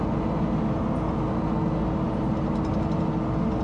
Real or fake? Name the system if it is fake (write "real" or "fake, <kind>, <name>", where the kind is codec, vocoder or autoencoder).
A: real